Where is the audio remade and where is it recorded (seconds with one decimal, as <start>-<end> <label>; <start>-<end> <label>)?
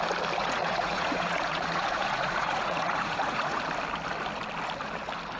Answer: 0.0-0.4 recorded; 0.4-3.6 remade; 3.6-5.4 recorded